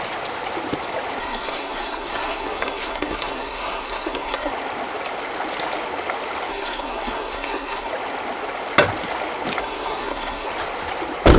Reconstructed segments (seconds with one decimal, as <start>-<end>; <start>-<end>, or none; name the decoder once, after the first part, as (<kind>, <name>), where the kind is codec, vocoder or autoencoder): 1.2-4.5 (codec, SNAC); 6.5-7.9; 9.6-10.5